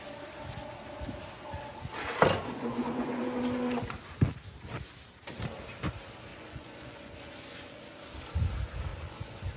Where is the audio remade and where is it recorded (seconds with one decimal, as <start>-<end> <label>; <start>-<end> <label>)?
0.0-2.4 recorded; 2.4-3.2 remade; 3.2-6.3 recorded; 6.3-7.8 remade; 7.8-8.9 recorded; 8.9-9.6 remade